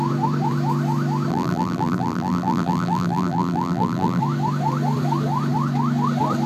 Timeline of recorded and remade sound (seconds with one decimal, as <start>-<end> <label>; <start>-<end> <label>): 0.0-1.3 recorded; 1.3-4.2 remade; 4.2-6.5 recorded